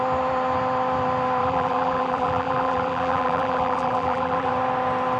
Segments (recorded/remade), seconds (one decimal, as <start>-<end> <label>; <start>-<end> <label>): 0.0-1.4 recorded; 1.4-4.5 remade; 4.5-5.2 recorded